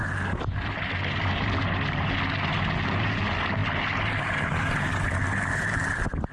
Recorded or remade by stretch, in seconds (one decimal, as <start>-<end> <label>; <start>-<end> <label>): 0.0-6.3 recorded